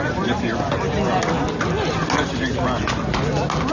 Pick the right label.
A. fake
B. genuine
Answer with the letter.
B